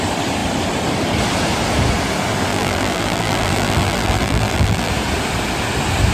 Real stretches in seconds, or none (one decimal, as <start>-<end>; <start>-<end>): 0.0-2.5; 4.9-6.1